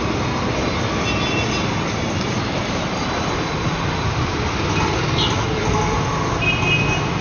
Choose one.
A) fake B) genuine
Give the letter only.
B